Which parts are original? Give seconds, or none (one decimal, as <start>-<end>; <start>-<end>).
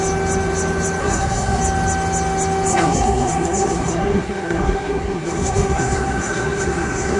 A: 0.0-1.0; 1.6-2.7